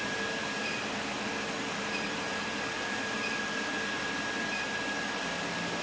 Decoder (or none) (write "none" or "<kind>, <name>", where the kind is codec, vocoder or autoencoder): none